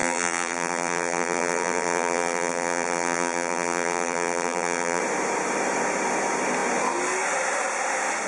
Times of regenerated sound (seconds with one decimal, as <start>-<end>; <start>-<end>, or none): 0.0-5.0